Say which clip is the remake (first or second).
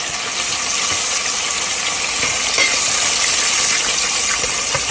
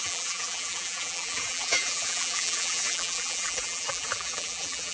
second